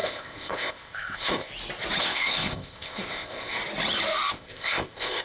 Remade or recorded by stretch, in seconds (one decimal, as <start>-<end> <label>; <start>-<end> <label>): 0.0-1.5 remade; 1.5-2.0 recorded; 2.0-3.6 remade; 3.6-4.3 recorded; 4.3-5.2 remade